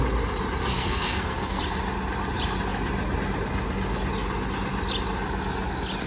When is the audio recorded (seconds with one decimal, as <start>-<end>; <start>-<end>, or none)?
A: 0.0-0.7; 1.6-6.1